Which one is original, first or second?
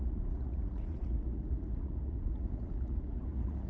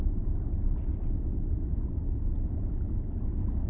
second